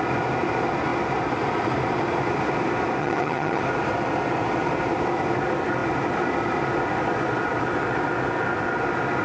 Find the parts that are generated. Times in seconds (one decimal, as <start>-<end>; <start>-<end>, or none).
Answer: 3.0-3.6